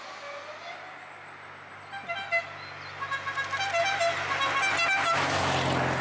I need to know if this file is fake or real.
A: real